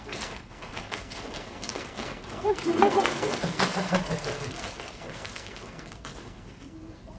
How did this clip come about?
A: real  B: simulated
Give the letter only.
B